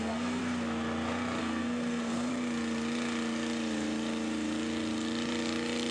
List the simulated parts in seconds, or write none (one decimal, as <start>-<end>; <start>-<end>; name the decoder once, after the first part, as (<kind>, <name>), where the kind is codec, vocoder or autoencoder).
0.0-0.4 (codec, SNAC); 1.4-2.3